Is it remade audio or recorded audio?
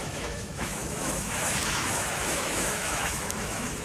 remade